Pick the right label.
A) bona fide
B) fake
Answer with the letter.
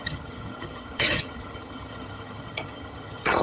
B